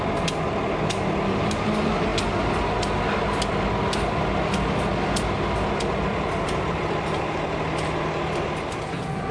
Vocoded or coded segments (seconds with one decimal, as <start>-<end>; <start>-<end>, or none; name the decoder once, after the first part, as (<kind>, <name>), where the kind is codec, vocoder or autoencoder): 6.1-6.9 (vocoder, BigVGAN v2)